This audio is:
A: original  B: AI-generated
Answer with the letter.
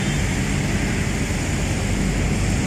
A